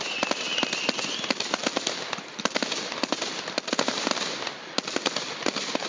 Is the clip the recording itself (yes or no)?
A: yes